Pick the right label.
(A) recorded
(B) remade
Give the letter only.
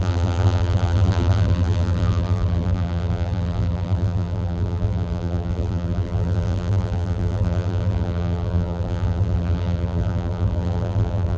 B